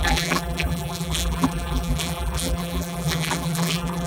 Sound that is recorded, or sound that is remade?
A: remade